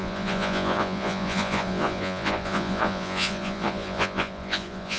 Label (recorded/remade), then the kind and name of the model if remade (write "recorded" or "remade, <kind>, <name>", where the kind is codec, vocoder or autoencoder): remade, vocoder, Vocos